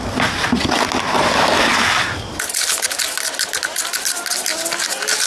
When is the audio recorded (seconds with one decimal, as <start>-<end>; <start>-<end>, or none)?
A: 0.0-5.3